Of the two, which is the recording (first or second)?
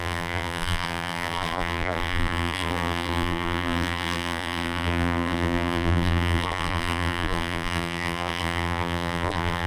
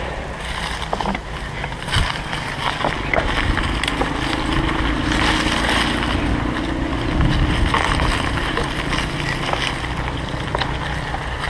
second